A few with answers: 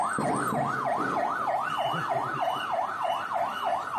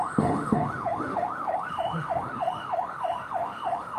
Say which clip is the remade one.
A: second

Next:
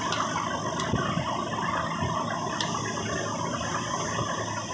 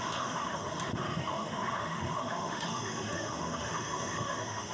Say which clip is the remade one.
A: second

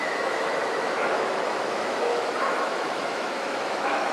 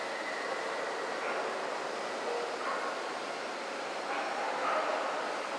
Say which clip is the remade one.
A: first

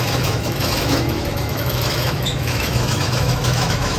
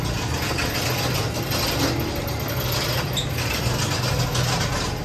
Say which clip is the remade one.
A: first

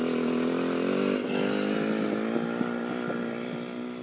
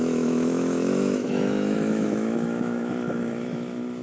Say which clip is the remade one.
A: second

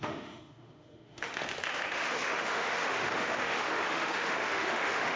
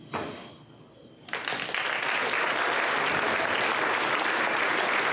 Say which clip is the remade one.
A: first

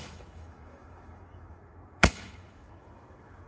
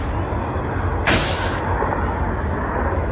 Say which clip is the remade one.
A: first